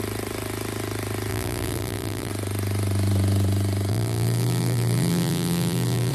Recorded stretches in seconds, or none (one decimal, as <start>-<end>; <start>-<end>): 0.0-1.3; 2.3-3.9